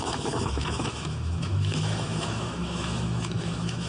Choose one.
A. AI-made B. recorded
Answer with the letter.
A